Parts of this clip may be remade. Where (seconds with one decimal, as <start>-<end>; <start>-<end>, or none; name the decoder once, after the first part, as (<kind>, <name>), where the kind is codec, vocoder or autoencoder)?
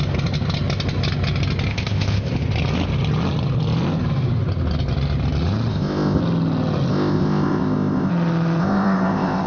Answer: 1.7-2.3 (codec, ZipCodec); 5.7-6.2; 6.9-8.1; 8.6-9.5